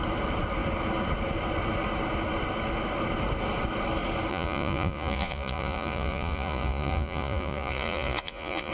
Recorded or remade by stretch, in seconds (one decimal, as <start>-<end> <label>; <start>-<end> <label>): 0.0-4.3 recorded; 4.3-8.7 remade